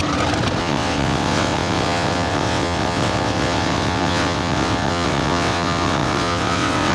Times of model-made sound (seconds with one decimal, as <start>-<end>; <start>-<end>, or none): 0.6-6.9